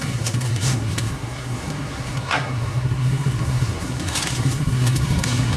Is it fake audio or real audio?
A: fake